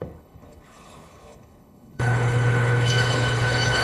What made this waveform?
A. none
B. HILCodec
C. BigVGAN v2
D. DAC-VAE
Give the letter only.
B